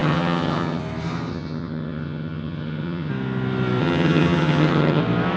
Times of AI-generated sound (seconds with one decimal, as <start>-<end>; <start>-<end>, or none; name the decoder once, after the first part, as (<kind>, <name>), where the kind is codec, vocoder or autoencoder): 0.0-0.8 (vocoder, HiFi-GAN); 1.3-3.1; 3.8-5.0